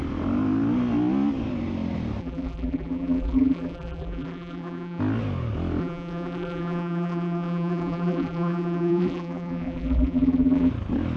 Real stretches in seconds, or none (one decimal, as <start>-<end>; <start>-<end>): 0.0-2.2; 5.0-5.8; 10.7-11.2